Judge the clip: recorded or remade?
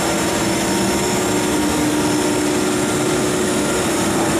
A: recorded